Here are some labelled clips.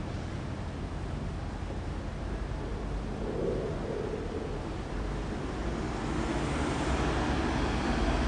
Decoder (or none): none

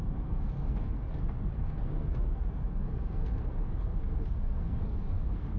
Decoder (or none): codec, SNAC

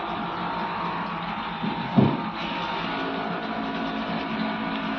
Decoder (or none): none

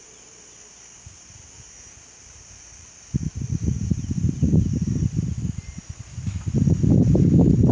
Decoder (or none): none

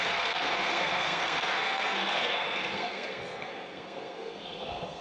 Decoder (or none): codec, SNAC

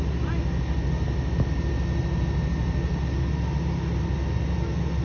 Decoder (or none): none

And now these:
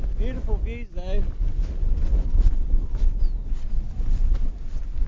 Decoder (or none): none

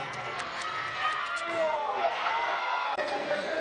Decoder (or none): codec, SNAC